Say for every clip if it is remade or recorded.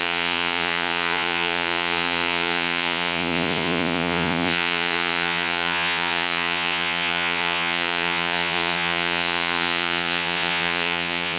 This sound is remade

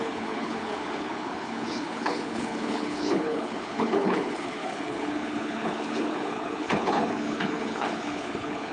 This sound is remade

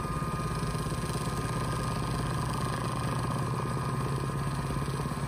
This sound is recorded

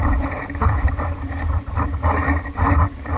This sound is remade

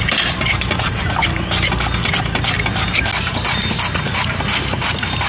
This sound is recorded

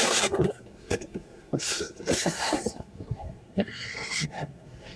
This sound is remade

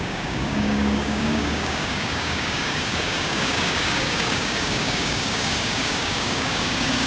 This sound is remade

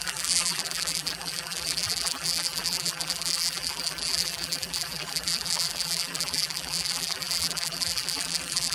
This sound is remade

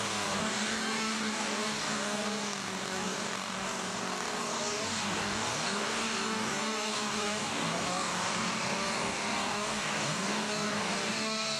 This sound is remade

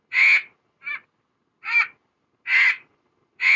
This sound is recorded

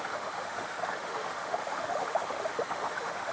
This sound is remade